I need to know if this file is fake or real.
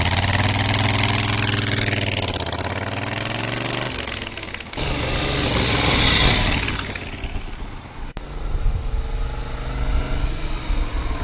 real